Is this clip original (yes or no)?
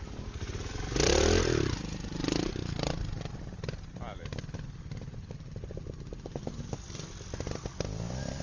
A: no